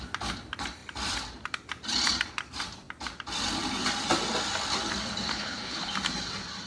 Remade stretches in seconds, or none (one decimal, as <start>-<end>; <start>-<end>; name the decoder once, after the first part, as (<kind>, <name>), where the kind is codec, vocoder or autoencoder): 5.3-5.9 (codec, HILCodec)